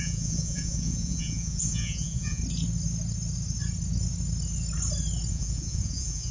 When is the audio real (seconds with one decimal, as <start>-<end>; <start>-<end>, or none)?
2.4-5.3